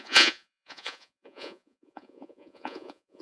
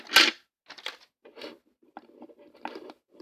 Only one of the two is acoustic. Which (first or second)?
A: second